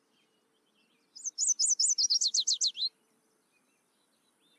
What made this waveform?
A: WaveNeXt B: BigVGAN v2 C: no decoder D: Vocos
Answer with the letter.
C